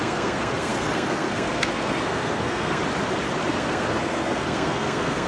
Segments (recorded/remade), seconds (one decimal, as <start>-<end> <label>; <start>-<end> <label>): 0.0-2.8 remade; 2.8-3.5 recorded; 3.5-5.3 remade